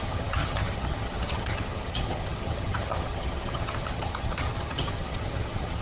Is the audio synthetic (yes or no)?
yes